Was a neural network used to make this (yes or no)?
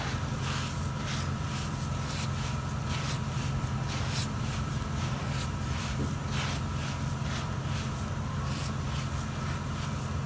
no